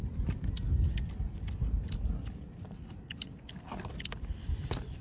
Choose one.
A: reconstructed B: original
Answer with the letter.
B